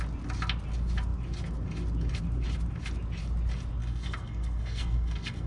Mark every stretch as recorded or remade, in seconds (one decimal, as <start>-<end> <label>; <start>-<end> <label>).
0.0-3.8 recorded; 3.8-5.5 remade